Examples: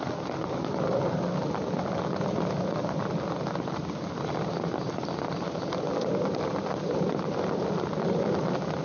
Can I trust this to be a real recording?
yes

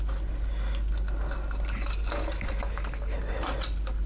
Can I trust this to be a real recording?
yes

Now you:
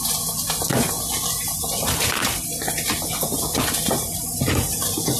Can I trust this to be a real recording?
yes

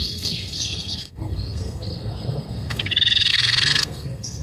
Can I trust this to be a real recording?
no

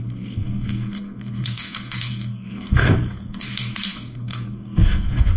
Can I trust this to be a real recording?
no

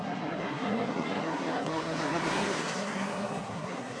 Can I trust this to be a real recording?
no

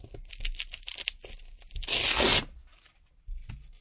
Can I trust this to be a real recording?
yes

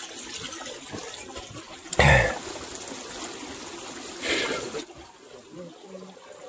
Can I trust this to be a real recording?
yes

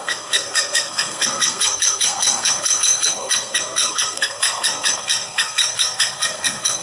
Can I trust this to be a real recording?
no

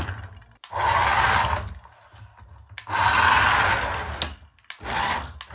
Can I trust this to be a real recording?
yes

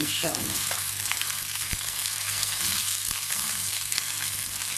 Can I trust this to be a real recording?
no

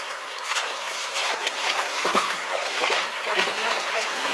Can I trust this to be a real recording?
no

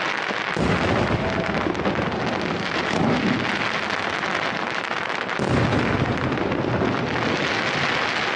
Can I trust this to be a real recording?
yes